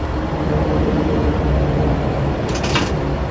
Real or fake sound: fake